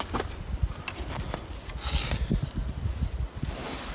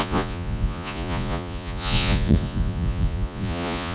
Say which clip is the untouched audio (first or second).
first